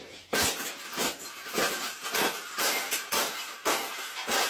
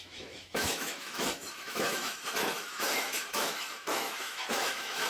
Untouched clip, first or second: first